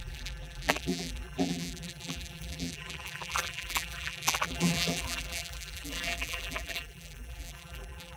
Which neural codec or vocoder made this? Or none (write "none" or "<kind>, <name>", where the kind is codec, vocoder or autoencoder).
vocoder, BigVGAN v2